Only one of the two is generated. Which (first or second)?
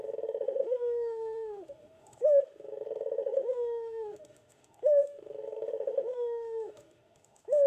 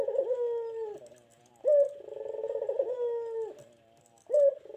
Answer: first